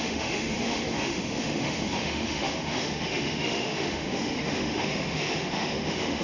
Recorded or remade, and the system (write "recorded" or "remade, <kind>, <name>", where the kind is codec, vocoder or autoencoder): remade, autoencoder, DAC-VAE